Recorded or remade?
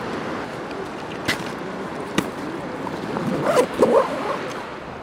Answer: remade